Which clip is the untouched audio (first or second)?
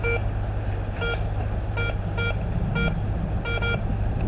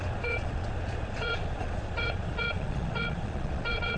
first